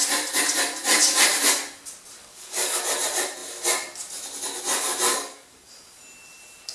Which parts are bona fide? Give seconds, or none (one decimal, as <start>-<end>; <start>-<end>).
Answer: 0.0-2.2; 2.8-5.1; 5.7-6.7